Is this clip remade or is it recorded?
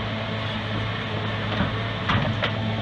recorded